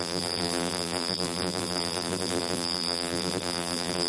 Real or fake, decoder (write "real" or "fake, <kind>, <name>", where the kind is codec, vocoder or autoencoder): fake, vocoder, BigVGAN v2